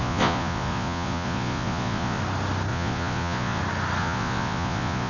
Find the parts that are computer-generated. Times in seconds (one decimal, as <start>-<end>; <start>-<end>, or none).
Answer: 0.0-2.2; 2.7-3.6; 4.0-5.1